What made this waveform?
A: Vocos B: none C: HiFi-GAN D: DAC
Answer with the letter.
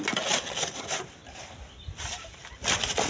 B